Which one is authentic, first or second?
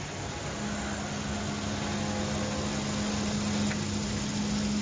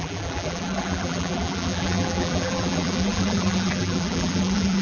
first